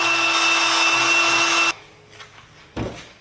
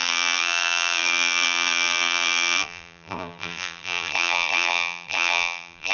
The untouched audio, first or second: first